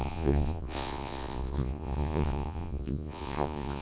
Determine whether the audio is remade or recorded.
remade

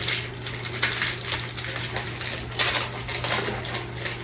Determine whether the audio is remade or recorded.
recorded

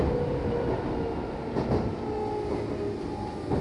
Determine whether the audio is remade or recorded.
recorded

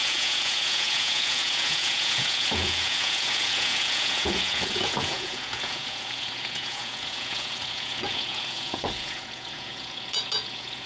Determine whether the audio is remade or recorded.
remade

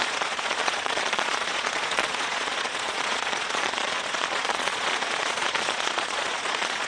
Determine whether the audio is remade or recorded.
remade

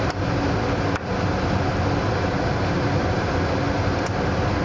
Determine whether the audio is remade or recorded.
recorded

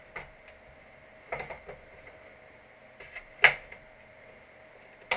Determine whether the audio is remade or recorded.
recorded